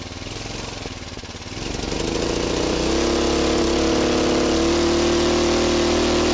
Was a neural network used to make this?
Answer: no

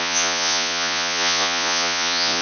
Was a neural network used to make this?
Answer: yes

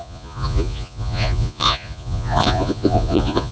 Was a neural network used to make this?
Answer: yes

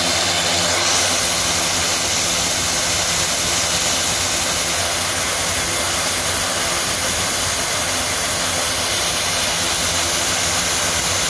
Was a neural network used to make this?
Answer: no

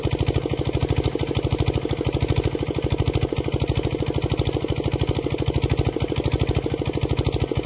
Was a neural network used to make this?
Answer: no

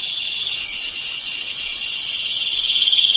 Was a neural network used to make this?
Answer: yes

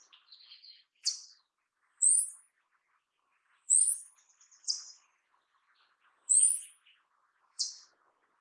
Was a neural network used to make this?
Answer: yes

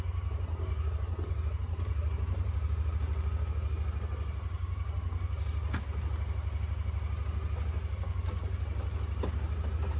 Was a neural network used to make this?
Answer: no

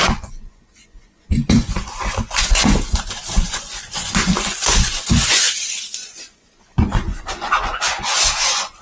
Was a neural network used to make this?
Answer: yes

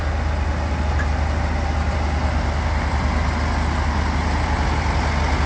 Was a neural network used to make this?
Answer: no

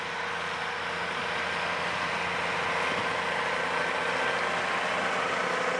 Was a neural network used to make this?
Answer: no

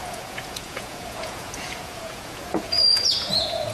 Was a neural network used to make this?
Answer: yes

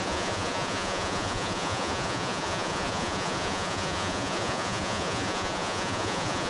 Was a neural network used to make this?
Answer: yes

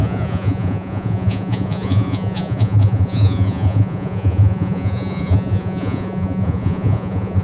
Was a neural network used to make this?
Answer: yes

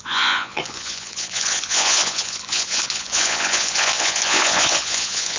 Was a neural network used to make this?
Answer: yes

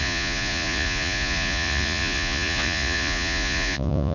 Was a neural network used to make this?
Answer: yes